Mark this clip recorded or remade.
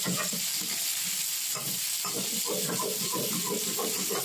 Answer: recorded